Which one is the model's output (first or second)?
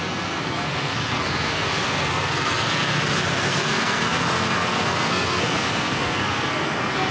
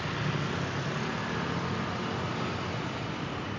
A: first